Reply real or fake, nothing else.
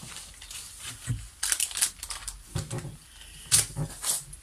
fake